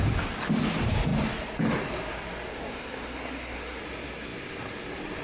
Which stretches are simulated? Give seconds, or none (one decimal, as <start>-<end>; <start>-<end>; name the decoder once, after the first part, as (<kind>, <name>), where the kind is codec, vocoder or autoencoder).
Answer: 2.5-3.8 (codec, SNAC)

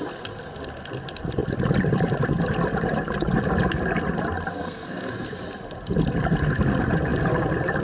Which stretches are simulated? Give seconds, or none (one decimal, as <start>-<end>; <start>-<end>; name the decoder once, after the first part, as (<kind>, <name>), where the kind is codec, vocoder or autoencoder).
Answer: 4.5-5.1 (codec, SNAC)